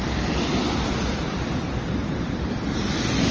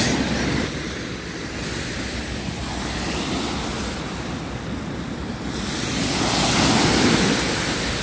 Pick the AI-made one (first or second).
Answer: first